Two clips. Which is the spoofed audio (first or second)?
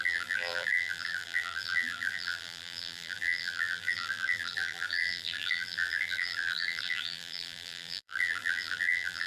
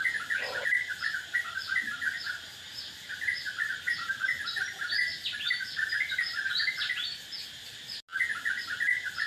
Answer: first